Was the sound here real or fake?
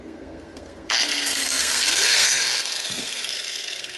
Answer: fake